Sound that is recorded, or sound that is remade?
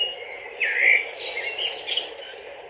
recorded